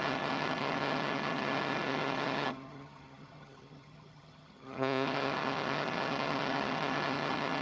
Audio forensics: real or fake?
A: fake